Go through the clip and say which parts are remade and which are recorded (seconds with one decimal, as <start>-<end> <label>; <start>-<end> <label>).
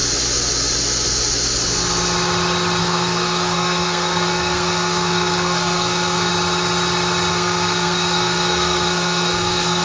0.0-2.8 recorded; 2.8-6.3 remade; 6.3-7.3 recorded; 7.3-9.8 remade